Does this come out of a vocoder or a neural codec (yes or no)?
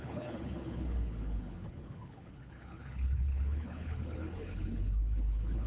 yes